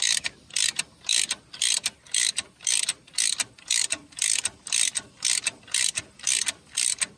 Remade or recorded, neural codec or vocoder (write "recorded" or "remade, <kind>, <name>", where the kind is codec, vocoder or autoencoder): recorded